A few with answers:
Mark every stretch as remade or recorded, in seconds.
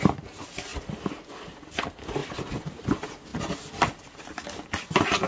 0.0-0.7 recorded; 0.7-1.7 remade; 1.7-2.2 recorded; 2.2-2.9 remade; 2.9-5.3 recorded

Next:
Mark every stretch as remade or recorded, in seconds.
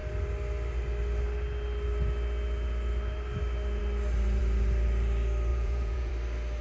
0.0-5.5 recorded; 5.5-6.1 remade; 6.1-6.6 recorded